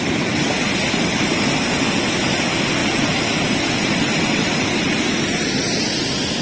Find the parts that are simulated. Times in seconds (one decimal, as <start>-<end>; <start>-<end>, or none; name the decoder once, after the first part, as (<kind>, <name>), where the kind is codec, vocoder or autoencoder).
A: none